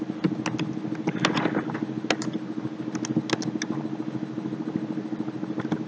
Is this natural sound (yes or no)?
yes